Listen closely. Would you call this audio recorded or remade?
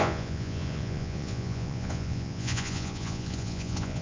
remade